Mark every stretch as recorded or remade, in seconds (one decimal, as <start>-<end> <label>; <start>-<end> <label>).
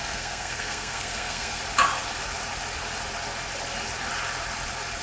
0.0-1.6 remade; 1.6-5.0 recorded